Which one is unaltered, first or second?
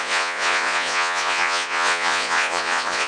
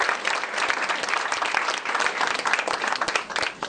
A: second